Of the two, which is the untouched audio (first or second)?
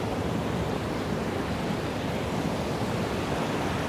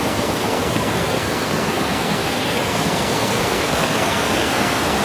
first